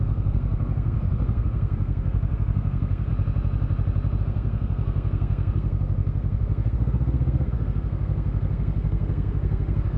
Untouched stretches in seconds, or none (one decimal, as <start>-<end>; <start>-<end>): 3.1-4.2